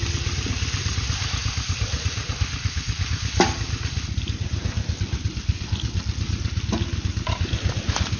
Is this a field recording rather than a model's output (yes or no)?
yes